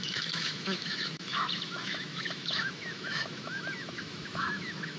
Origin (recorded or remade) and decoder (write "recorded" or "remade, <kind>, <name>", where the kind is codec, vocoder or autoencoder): remade, autoencoder, DAC-VAE